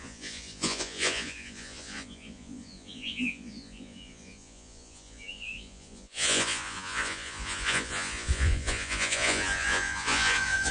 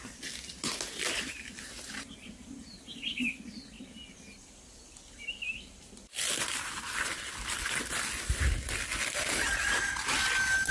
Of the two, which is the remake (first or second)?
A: first